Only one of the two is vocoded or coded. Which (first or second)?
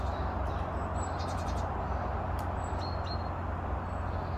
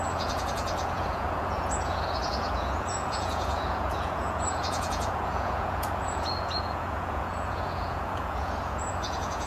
second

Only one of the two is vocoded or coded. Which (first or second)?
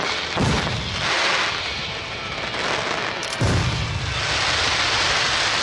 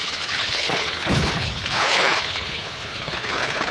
second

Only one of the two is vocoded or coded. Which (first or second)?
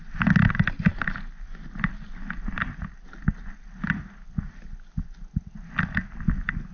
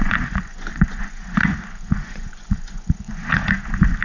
second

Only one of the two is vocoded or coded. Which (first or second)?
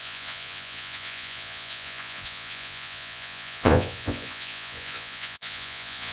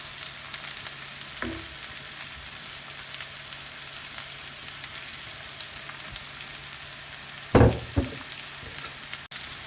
first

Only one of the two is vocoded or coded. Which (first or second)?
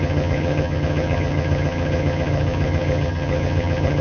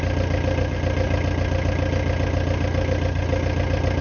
first